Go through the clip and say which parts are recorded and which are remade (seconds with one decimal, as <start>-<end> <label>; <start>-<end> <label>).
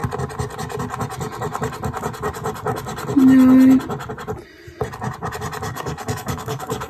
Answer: 0.0-5.7 recorded; 5.7-6.9 remade